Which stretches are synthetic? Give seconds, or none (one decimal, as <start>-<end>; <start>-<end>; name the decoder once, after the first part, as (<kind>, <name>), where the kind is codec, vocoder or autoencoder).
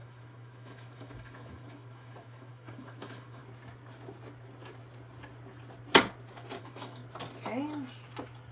0.0-3.4 (autoencoder, DAC-VAE); 6.6-7.0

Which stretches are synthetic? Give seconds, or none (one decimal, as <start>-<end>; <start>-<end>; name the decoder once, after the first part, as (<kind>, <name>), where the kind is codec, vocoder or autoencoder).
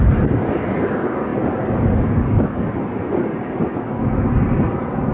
3.7-4.3 (autoencoder, DAC-VAE)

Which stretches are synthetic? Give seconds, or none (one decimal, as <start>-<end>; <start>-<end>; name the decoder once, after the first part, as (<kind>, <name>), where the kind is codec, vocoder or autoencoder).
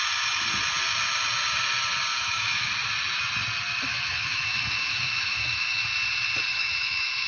2.1-2.7 (autoencoder, DAC-VAE); 3.9-5.8; 6.5-7.3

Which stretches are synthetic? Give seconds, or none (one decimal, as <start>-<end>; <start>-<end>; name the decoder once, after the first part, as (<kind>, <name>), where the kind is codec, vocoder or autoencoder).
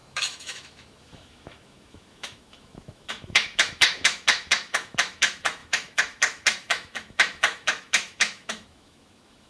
0.0-9.5 (autoencoder, DAC-VAE)